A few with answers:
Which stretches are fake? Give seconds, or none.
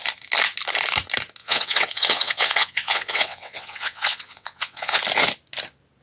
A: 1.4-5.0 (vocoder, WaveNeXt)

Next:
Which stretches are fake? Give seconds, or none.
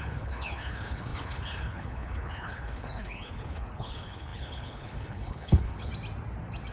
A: 0.0-5.9 (codec, HILCodec)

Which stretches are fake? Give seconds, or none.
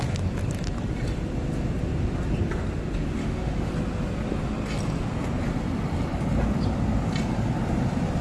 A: 3.2-3.7 (autoencoder, DAC-VAE)